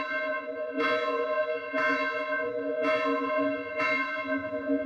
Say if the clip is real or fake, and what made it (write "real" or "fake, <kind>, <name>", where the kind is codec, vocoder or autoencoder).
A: fake, vocoder, Vocos